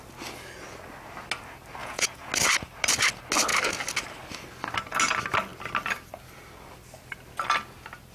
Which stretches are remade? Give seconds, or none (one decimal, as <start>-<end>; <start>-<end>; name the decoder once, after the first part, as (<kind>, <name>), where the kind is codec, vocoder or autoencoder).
1.8-2.3 (vocoder, Vocos)